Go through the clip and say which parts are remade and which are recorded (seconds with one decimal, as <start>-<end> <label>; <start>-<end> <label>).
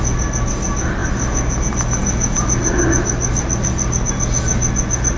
0.0-5.2 recorded